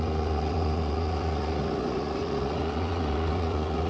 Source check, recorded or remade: remade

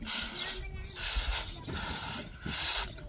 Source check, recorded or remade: recorded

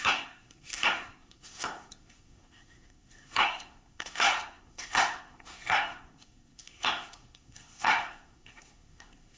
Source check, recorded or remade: remade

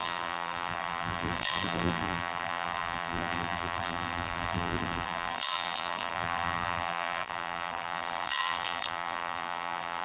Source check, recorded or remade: remade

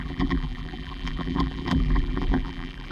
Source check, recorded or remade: remade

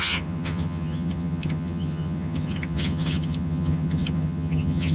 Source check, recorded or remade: remade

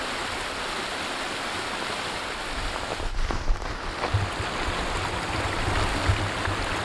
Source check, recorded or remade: recorded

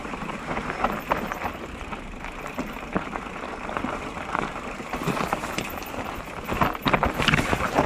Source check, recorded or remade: remade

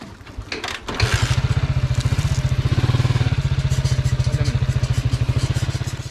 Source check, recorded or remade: recorded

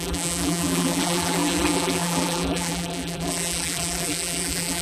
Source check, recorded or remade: remade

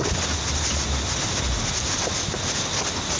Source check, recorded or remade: recorded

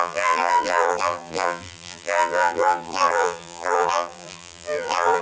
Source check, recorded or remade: remade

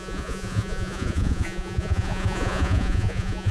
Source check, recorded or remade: remade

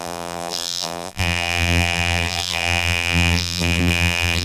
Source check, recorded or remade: remade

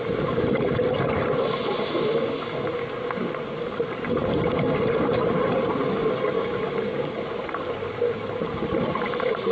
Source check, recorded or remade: recorded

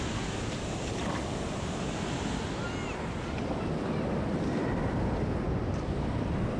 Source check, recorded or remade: recorded